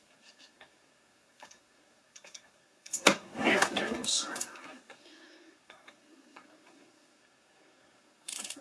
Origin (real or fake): fake